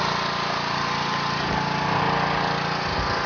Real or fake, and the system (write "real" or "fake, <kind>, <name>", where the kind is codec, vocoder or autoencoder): real